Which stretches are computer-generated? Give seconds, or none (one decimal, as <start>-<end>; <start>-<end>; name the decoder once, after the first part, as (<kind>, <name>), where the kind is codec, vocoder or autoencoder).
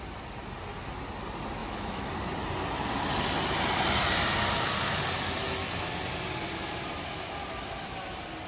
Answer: 1.6-2.1 (autoencoder, DAC-VAE)